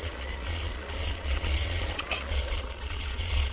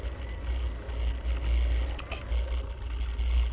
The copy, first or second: first